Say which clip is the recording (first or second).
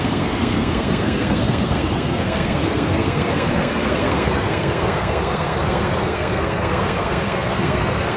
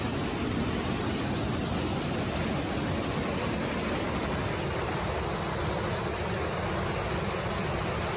second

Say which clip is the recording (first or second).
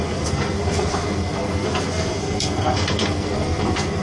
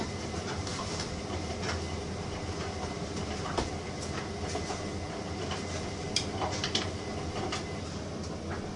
second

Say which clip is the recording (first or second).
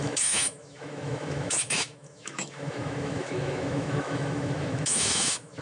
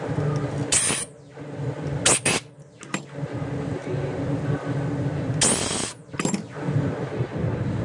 second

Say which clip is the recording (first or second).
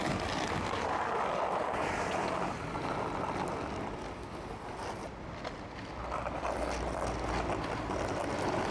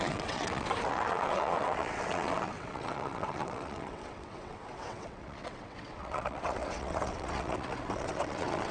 first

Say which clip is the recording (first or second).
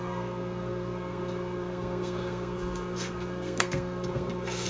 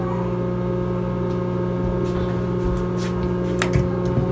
second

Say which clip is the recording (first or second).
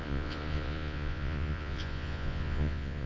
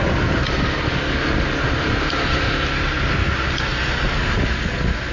second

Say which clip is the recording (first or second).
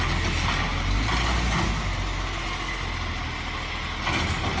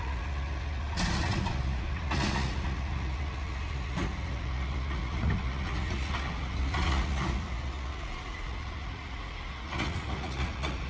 first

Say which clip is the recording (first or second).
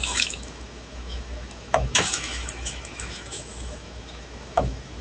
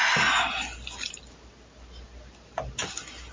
second